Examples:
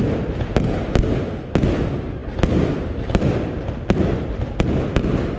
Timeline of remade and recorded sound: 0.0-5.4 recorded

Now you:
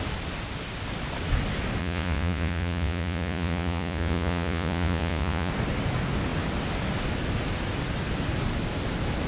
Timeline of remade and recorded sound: 0.0-1.8 recorded; 1.8-5.5 remade; 5.5-9.3 recorded

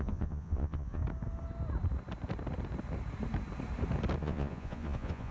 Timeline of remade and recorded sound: 0.0-1.0 remade; 1.0-4.2 recorded; 4.2-5.3 remade

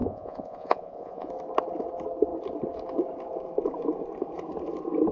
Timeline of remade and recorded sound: 0.0-1.3 remade; 1.3-5.1 recorded

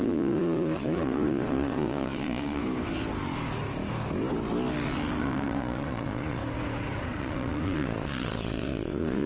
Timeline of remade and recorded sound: 0.0-2.6 remade; 2.6-5.2 recorded; 5.2-6.4 remade; 6.4-7.2 recorded; 7.2-9.3 remade

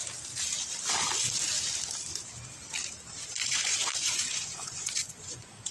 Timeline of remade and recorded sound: 0.0-3.4 recorded; 3.4-5.7 remade

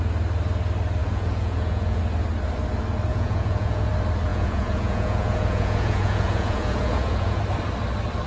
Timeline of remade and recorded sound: 0.0-1.0 recorded; 1.0-2.0 remade; 2.0-3.1 recorded; 3.1-3.9 remade; 3.9-4.3 recorded; 4.3-7.4 remade; 7.4-8.3 recorded